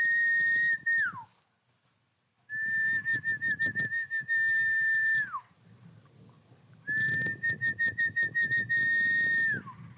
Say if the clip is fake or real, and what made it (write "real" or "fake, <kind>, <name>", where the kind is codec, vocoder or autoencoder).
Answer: real